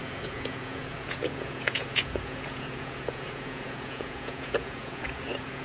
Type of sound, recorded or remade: remade